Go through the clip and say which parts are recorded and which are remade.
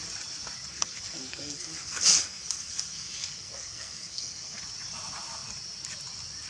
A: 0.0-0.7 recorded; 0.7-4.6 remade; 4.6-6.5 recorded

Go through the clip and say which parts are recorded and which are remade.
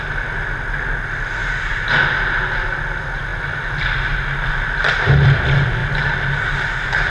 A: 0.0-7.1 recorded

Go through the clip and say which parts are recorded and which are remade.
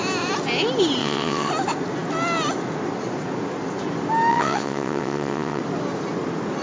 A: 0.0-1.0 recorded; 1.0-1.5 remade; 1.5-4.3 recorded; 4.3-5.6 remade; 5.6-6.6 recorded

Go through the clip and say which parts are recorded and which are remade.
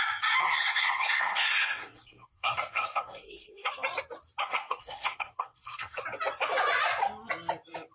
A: 0.0-0.4 recorded; 0.4-3.7 remade; 3.7-4.4 recorded; 4.4-6.0 remade; 6.0-7.9 recorded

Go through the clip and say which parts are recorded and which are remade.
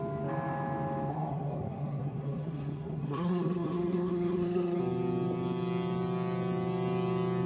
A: 0.0-1.1 recorded; 1.1-4.8 remade; 4.8-7.5 recorded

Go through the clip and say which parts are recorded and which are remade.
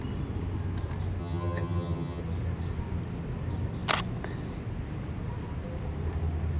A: 0.0-1.2 recorded; 1.2-2.2 remade; 2.2-6.6 recorded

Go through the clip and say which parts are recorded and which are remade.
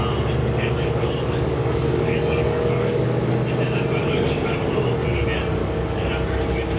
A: 0.0-0.4 recorded; 0.4-3.3 remade; 3.3-4.0 recorded; 4.0-4.6 remade; 4.6-5.6 recorded; 5.6-6.1 remade; 6.1-6.8 recorded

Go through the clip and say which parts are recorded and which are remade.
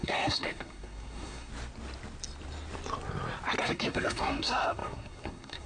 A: 0.0-1.5 remade; 1.5-3.6 recorded; 3.6-5.7 remade